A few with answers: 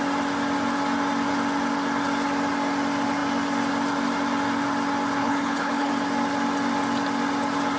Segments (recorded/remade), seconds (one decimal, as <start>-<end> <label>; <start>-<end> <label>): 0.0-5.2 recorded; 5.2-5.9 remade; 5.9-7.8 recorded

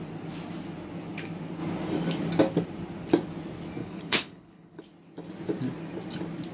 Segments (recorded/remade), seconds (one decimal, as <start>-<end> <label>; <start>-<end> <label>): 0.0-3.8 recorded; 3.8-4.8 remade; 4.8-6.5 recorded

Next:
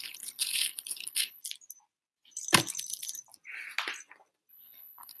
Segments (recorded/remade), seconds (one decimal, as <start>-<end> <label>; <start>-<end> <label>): 0.0-1.4 remade; 1.4-4.5 recorded; 4.5-5.2 remade

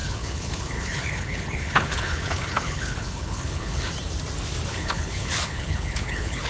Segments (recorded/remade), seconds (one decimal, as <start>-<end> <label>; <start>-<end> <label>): 0.0-3.9 remade; 3.9-4.7 recorded; 4.7-6.5 remade